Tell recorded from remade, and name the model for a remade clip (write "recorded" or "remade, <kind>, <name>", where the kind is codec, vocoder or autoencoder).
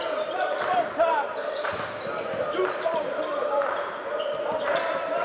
remade, vocoder, BigVGAN v2